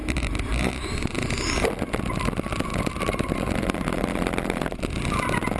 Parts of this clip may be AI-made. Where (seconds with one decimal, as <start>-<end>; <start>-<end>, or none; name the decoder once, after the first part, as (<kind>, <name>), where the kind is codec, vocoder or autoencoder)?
0.0-0.7 (vocoder, BigVGAN v2); 2.7-4.8

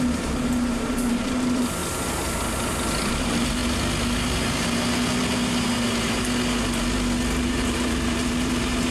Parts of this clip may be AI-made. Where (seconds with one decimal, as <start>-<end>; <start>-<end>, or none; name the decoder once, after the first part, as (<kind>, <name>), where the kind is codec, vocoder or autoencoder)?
0.0-1.8 (vocoder, BigVGAN v2); 3.1-3.6; 7.4-8.9

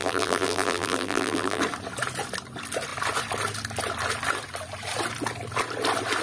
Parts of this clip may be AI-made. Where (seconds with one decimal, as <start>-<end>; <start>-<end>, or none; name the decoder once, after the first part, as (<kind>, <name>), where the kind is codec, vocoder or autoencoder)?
0.0-1.6 (vocoder, BigVGAN v2)

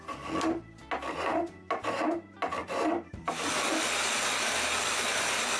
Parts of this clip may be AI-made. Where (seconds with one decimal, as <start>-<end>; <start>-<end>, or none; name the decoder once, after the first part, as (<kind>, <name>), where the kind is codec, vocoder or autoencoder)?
2.6-5.6 (vocoder, BigVGAN v2)

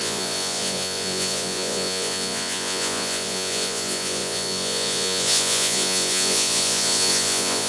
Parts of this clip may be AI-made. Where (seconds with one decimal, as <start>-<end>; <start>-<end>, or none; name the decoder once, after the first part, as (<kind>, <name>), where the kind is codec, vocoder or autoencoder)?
0.0-7.7 (vocoder, Vocos)

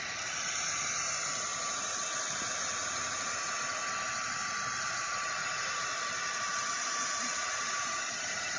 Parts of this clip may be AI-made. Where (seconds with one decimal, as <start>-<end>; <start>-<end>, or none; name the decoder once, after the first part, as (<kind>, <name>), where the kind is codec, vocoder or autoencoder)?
0.0-3.8 (vocoder, Vocos); 4.8-8.6

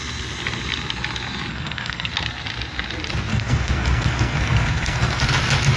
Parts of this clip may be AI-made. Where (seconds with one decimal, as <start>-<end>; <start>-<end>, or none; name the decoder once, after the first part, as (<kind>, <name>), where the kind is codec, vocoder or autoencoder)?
1.5-2.1 (codec, SNAC); 3.3-5.2

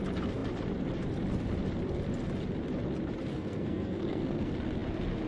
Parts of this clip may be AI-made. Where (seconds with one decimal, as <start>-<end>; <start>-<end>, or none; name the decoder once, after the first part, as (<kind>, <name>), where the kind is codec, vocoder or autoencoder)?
3.3-4.5 (codec, SNAC)